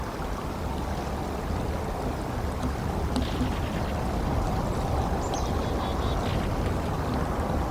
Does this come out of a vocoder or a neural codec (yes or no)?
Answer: no